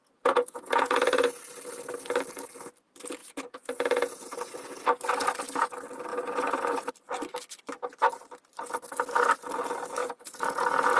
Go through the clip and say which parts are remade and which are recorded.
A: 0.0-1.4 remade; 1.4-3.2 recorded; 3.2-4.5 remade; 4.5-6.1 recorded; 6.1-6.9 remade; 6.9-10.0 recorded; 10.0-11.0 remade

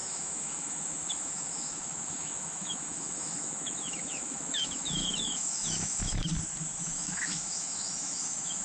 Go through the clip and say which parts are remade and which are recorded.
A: 0.0-6.2 remade; 6.2-6.8 recorded; 6.8-8.6 remade

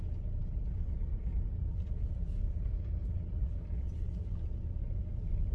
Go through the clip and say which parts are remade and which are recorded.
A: 0.0-5.5 recorded

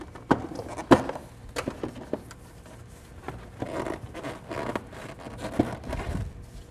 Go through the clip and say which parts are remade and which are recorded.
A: 0.0-1.4 recorded; 1.4-4.1 remade; 4.1-6.7 recorded

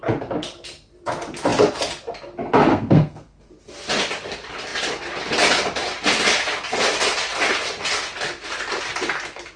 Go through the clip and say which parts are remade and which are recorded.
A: 0.0-2.7 recorded; 2.7-3.5 remade; 3.5-9.6 recorded